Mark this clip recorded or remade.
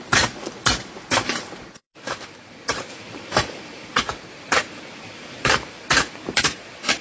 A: remade